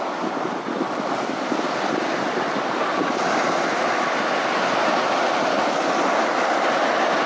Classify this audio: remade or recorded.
recorded